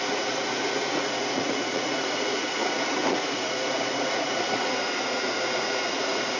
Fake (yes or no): yes